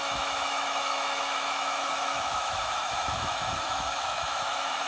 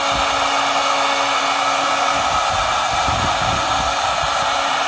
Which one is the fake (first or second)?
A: first